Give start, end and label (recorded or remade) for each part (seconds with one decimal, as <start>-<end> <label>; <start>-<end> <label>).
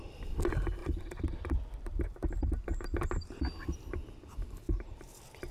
0.0-0.8 recorded; 0.8-2.3 remade; 2.3-5.5 recorded